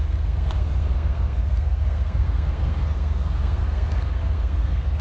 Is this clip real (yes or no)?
no